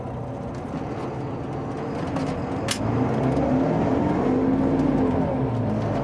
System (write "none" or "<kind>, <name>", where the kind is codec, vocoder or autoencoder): none